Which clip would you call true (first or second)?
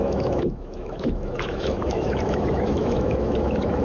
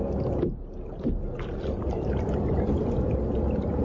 second